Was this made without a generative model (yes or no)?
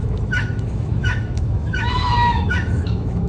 no